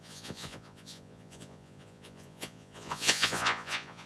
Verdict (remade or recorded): remade